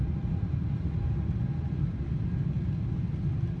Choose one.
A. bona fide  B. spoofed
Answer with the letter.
A